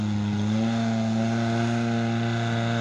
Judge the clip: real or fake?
real